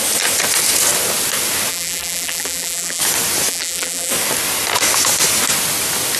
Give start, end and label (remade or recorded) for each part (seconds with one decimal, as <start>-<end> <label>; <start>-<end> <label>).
0.0-1.7 recorded; 1.7-3.0 remade; 3.0-3.5 recorded; 3.5-4.1 remade; 4.1-6.2 recorded